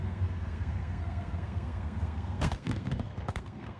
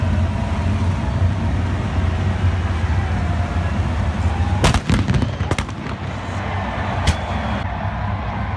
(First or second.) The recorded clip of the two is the second